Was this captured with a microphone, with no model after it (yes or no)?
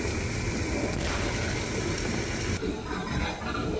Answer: yes